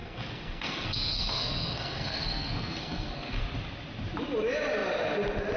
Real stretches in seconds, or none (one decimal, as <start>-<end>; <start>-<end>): 3.4-5.6